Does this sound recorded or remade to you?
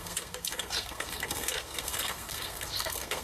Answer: remade